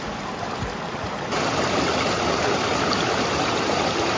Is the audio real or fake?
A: fake